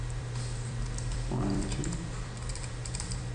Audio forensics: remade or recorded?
remade